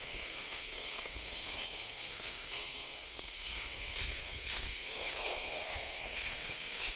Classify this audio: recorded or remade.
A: remade